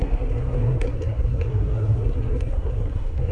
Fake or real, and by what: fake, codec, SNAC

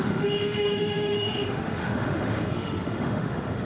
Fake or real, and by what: fake, autoencoder, DAC-VAE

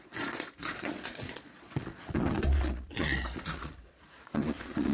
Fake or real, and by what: fake, vocoder, Vocos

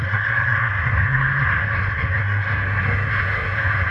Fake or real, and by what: fake, codec, SNAC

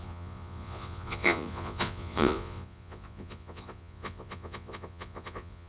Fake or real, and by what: fake, vocoder, Vocos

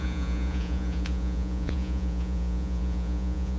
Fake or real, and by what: fake, vocoder, Vocos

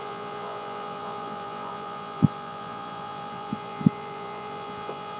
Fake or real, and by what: fake, vocoder, Vocos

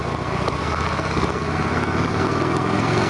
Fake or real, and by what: fake, codec, SNAC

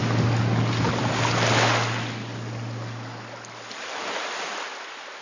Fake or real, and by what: real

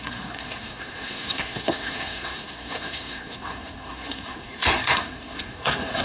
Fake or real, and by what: fake, codec, SNAC